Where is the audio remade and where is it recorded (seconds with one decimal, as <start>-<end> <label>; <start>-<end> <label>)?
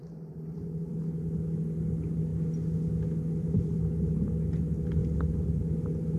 0.0-1.0 remade; 1.0-6.2 recorded